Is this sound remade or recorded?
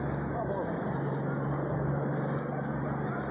recorded